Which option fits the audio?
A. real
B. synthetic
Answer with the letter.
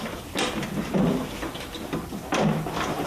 A